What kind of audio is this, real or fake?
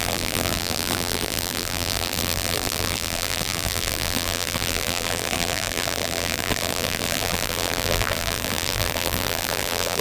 fake